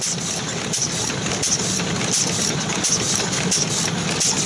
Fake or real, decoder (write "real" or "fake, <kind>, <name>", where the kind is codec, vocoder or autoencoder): real